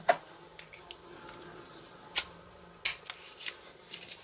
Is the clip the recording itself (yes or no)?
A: yes